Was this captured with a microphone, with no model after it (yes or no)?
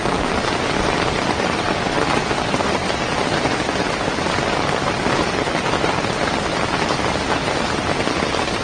yes